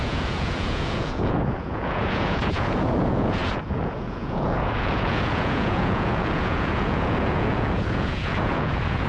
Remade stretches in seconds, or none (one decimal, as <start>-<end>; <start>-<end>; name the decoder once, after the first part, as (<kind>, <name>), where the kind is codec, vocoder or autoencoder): 0.0-9.1 (vocoder, Vocos)

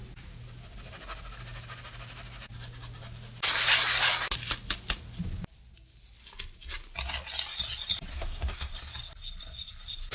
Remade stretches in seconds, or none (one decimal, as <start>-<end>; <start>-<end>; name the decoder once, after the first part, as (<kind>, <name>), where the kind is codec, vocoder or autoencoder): 8.1-8.7 (codec, SNAC)

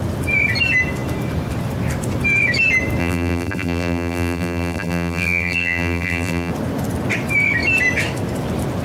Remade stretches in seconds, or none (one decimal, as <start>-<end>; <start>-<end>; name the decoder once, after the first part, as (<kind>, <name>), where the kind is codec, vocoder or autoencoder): 3.0-6.5 (vocoder, BigVGAN v2)

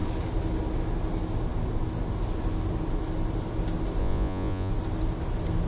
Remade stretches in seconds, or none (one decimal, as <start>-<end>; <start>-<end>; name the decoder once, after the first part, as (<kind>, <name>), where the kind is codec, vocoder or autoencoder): 4.0-4.7 (vocoder, Vocos)

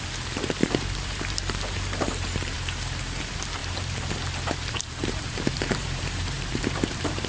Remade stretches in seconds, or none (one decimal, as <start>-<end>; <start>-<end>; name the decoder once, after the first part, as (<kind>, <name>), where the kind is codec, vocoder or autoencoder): 0.6-3.2 (vocoder, BigVGAN v2); 3.6-7.3

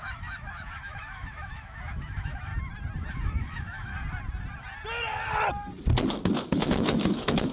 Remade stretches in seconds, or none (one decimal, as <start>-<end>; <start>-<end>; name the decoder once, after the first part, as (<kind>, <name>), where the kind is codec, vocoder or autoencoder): 0.0-2.5 (autoencoder, DAC-VAE); 3.1-3.9; 6.5-7.5